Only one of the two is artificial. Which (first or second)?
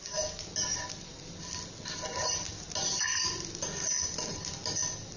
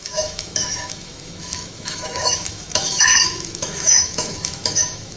second